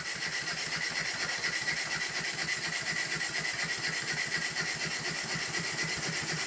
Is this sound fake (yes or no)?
yes